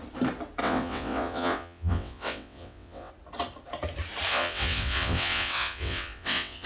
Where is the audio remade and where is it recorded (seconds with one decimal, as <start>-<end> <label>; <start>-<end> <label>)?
0.0-0.6 recorded; 0.6-3.1 remade; 3.1-4.3 recorded; 4.3-6.7 remade